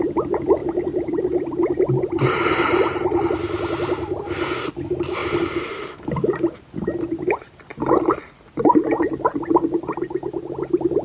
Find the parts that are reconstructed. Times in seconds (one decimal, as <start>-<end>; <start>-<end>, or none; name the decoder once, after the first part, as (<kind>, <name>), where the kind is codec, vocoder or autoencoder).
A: 0.6-1.2 (vocoder, BigVGAN v2); 2.5-3.3; 5.2-7.6

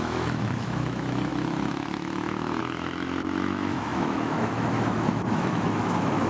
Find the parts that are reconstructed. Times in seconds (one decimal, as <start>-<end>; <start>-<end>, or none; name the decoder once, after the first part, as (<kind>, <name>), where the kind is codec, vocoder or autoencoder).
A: 0.0-6.3 (autoencoder, DAC-VAE)